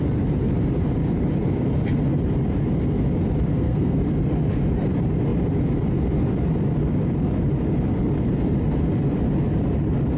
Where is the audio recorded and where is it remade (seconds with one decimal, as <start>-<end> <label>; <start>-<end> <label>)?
0.0-3.5 recorded; 3.5-4.0 remade; 4.0-10.2 recorded